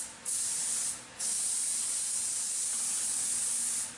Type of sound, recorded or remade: recorded